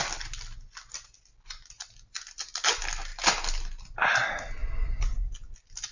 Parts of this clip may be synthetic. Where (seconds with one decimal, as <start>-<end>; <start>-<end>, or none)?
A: none